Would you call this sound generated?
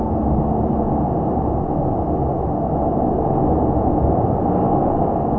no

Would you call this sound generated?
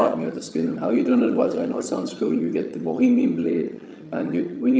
yes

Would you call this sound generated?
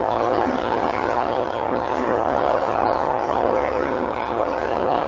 yes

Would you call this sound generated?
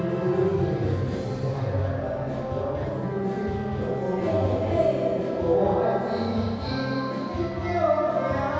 no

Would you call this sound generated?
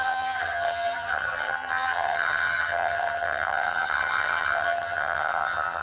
yes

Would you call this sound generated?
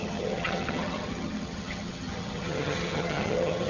yes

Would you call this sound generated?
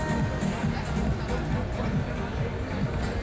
no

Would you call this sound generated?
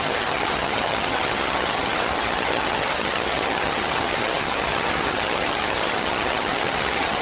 yes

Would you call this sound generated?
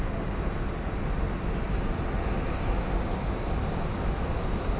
no